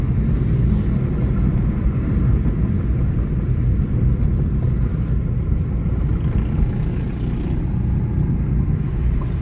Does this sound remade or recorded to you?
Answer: recorded